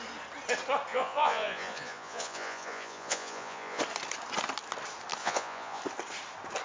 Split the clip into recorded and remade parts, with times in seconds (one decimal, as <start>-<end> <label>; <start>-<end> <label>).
0.0-0.9 recorded; 0.9-3.8 remade; 3.8-5.2 recorded; 5.2-5.8 remade; 5.8-6.6 recorded